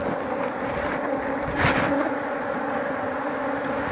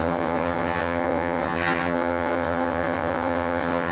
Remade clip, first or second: second